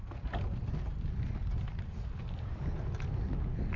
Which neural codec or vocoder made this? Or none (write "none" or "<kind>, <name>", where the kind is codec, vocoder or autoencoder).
none